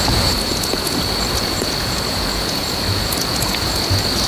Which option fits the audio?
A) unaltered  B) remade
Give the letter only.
B